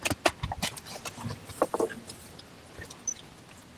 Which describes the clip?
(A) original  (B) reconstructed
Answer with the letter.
A